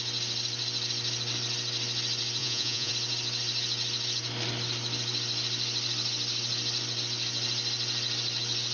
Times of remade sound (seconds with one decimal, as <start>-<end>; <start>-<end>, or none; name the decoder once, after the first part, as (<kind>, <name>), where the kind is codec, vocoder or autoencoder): 2.4-2.9 (vocoder, Vocos)